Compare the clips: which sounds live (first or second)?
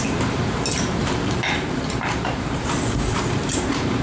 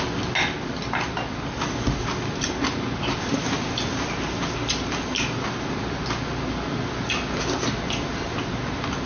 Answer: second